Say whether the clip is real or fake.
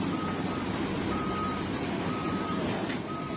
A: fake